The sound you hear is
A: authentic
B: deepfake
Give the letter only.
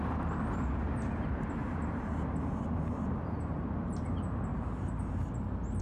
B